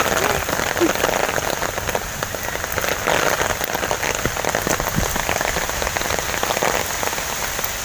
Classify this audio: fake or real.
real